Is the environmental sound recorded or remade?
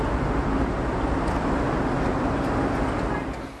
recorded